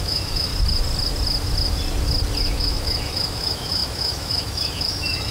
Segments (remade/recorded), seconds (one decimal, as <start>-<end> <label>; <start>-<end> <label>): 0.0-0.5 remade; 0.5-2.5 recorded; 2.5-5.3 remade